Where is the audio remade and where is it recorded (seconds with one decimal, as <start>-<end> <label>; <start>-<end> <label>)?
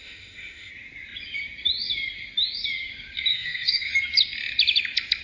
0.0-0.7 remade; 0.7-3.3 recorded; 3.3-3.9 remade; 3.9-5.2 recorded